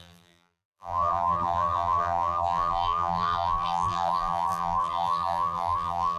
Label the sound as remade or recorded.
remade